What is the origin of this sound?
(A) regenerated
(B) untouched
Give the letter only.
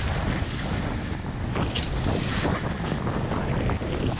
B